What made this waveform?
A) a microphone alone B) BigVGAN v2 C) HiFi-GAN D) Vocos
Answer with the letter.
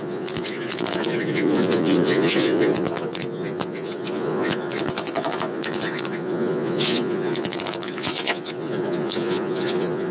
D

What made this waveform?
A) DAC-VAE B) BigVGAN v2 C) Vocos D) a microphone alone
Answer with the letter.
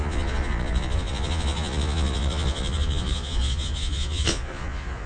C